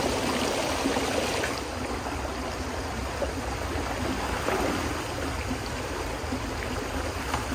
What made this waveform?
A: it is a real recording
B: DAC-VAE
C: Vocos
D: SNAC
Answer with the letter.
A